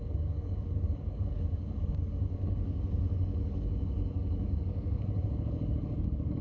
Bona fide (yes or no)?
no